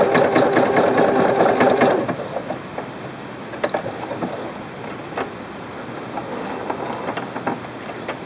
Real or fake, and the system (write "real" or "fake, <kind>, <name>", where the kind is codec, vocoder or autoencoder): real